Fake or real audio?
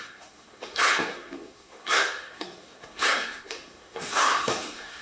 fake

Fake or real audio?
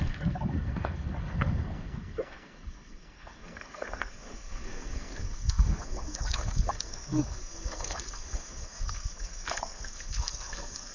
fake